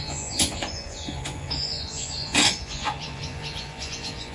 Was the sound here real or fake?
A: fake